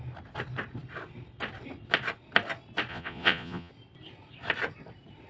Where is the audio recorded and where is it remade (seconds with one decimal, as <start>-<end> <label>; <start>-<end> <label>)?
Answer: 0.0-2.9 recorded; 2.9-3.7 remade; 3.7-5.3 recorded